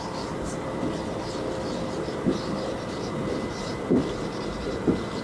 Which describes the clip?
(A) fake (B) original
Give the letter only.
A